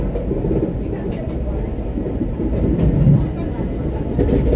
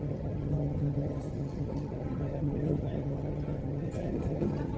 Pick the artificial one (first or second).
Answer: second